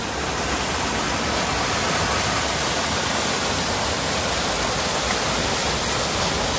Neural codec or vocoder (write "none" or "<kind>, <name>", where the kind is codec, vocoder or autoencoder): none